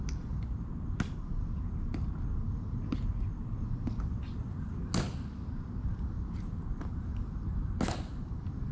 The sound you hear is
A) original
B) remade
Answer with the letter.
A